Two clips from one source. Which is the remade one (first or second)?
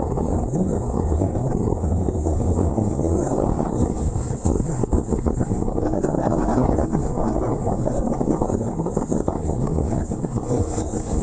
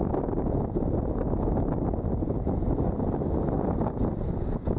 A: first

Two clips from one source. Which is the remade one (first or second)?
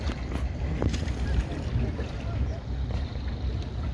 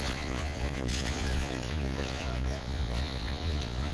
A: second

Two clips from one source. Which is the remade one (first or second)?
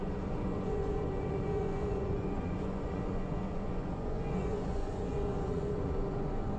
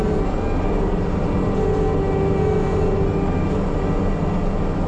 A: first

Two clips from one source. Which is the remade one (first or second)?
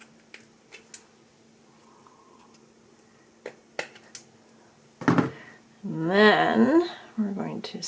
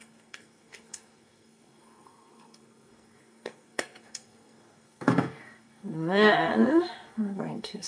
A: second